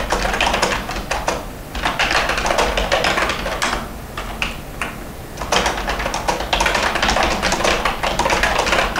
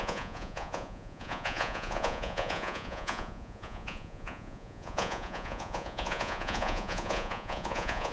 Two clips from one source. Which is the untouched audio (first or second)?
first